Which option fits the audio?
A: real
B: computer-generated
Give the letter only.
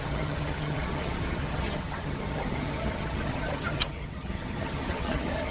B